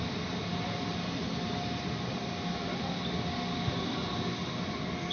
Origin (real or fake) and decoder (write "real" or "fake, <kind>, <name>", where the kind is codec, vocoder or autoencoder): real